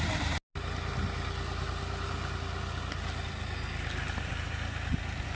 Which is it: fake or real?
real